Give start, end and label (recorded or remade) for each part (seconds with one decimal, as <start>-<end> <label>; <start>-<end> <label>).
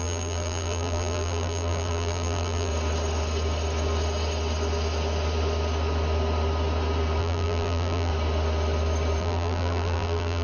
0.0-2.7 remade; 2.7-7.2 recorded; 7.2-8.1 remade; 8.1-9.2 recorded; 9.2-10.4 remade